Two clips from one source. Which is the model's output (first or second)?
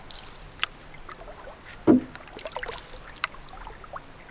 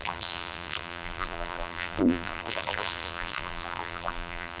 second